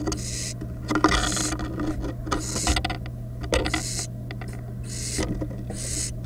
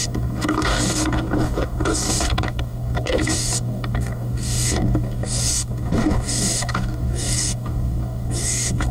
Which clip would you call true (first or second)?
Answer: first